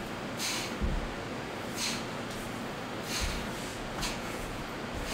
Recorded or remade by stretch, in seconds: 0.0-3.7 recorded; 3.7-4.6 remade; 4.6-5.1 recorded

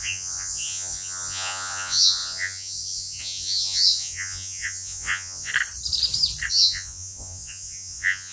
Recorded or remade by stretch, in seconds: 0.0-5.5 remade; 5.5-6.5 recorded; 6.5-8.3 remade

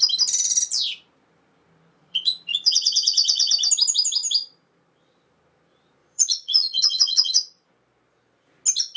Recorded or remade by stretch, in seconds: 0.0-1.9 recorded; 1.9-3.5 remade; 3.5-6.0 recorded; 6.0-7.7 remade; 7.7-9.0 recorded

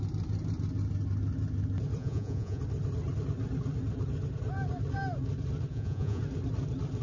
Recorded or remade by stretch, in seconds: 0.0-2.0 recorded; 2.0-2.6 remade; 2.6-5.7 recorded; 5.7-6.2 remade; 6.2-7.0 recorded

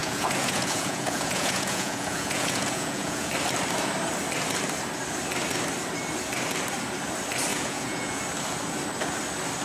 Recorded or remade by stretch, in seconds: 0.0-3.3 remade; 3.3-7.5 recorded; 7.5-8.2 remade; 8.2-9.6 recorded

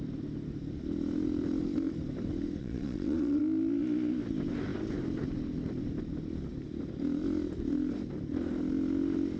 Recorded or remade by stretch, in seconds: 0.0-2.6 recorded; 2.6-3.4 remade; 3.4-9.4 recorded

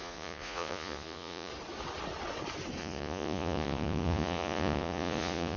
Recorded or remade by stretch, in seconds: 0.0-1.5 remade; 1.5-2.8 recorded; 2.8-5.6 remade